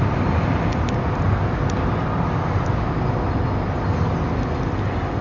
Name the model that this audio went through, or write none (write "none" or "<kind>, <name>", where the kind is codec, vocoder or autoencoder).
none